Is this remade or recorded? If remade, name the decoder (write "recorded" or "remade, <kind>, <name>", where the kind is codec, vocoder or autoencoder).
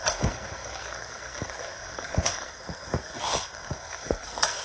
remade, codec, SNAC